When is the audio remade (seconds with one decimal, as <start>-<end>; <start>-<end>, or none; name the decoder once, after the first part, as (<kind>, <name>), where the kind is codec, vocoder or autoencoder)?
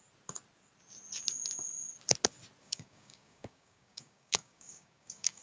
2.6-5.4 (codec, DAC)